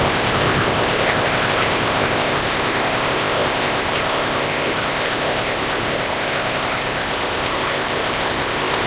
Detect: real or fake fake